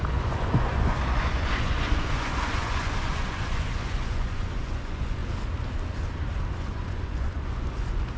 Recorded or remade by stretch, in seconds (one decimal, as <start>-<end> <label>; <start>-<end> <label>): 0.0-5.2 remade; 5.2-6.5 recorded; 6.5-8.2 remade